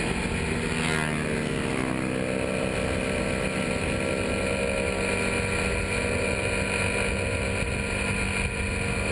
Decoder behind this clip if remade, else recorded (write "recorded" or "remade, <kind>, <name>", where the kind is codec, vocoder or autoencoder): recorded